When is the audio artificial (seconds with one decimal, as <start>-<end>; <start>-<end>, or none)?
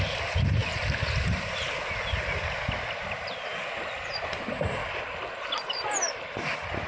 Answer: none